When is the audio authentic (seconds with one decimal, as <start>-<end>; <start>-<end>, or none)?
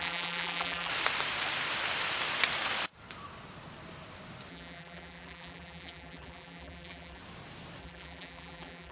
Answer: 0.9-4.5; 7.2-7.8